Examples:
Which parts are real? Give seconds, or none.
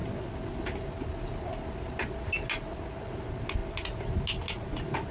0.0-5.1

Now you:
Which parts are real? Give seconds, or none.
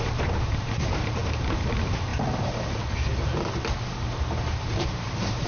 2.1-4.6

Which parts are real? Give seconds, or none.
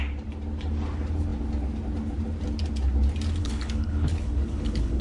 0.0-3.4